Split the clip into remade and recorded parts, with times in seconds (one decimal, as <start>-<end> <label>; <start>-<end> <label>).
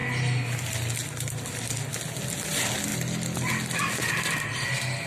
0.0-5.1 recorded